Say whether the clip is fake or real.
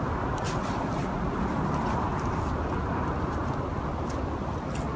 real